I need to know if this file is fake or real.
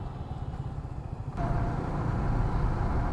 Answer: real